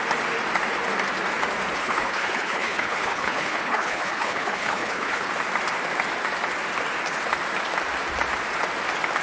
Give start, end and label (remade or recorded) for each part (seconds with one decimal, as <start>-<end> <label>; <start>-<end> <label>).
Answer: 0.0-1.8 recorded; 1.8-5.3 remade; 5.3-9.2 recorded